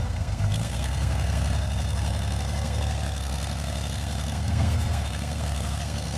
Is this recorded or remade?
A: remade